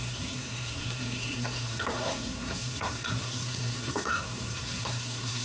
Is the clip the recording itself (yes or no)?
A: no